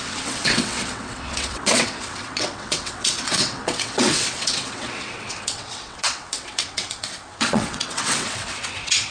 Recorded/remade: remade